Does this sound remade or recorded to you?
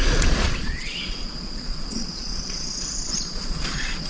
remade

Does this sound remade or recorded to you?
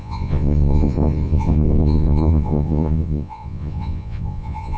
remade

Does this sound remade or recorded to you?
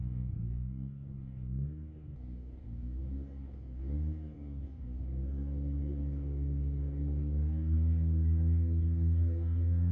remade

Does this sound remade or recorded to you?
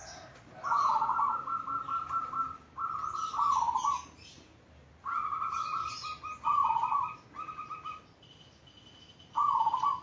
recorded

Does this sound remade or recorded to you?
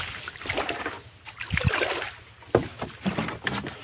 recorded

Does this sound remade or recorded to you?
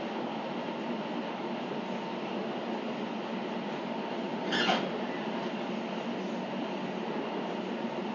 recorded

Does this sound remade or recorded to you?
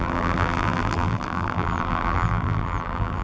remade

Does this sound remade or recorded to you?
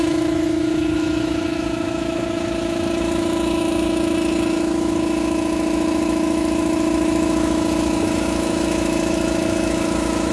remade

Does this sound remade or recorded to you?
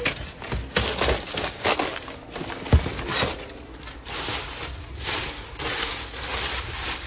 recorded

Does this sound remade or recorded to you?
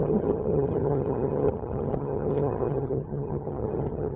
remade